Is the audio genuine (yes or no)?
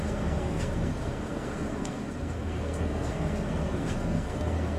no